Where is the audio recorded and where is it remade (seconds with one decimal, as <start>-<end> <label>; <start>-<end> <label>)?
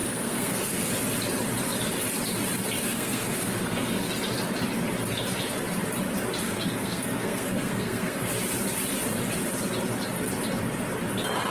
0.0-0.9 remade; 0.9-2.8 recorded; 2.8-4.1 remade; 4.1-6.4 recorded; 6.4-8.3 remade; 8.3-11.5 recorded